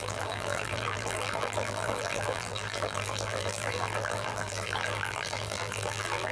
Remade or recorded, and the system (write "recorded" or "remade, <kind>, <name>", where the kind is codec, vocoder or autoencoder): remade, vocoder, BigVGAN v2